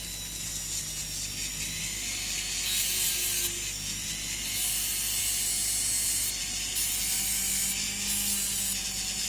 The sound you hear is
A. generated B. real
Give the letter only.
B